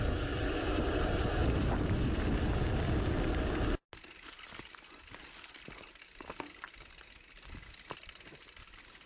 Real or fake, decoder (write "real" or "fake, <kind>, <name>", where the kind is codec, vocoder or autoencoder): real